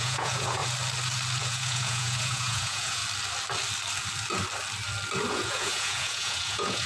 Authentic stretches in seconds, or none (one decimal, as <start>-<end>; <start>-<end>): 0.6-1.4; 3.0-5.3